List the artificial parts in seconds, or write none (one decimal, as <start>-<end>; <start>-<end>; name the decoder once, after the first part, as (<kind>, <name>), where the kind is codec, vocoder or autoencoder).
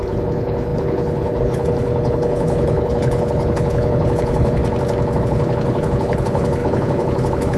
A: 0.0-4.6 (codec, HILCodec); 5.2-7.6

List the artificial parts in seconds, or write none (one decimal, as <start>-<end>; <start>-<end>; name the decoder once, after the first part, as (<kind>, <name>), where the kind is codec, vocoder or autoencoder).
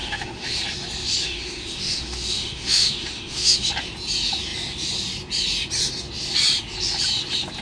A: 0.0-0.6 (autoencoder, DAC-VAE); 1.2-3.7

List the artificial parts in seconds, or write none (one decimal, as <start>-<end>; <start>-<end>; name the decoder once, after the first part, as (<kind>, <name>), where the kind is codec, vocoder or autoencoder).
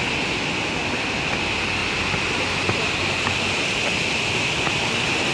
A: none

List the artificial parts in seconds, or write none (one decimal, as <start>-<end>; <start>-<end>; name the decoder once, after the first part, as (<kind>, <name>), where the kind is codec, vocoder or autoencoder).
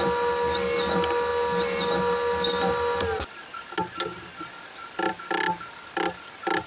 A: none